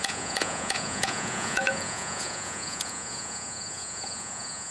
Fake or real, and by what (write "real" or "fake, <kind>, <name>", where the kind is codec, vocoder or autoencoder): fake, vocoder, Vocos